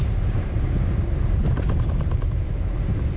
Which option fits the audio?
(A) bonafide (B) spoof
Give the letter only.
B